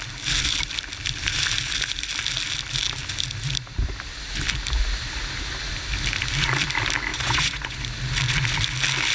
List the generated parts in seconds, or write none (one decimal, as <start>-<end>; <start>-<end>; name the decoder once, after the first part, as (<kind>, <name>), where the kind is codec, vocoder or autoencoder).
7.1-7.8 (vocoder, Vocos)